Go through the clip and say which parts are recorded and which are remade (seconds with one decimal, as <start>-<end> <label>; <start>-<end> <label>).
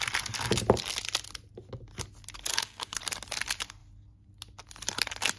0.0-2.5 recorded; 2.5-3.0 remade; 3.0-5.4 recorded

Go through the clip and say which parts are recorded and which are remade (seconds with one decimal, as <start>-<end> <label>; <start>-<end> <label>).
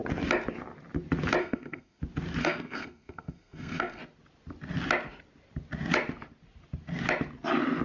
0.0-1.4 recorded; 1.4-2.0 remade; 2.0-2.4 recorded; 2.4-4.0 remade; 4.0-7.8 recorded